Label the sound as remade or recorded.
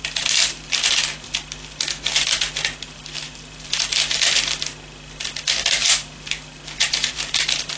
recorded